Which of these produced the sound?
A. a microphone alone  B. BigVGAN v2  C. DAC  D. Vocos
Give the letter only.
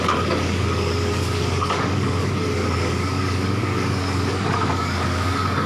C